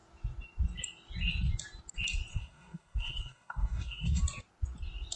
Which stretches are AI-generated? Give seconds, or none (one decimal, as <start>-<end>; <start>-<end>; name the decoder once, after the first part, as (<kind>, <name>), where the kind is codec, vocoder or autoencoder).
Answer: 2.3-4.2 (codec, SNAC)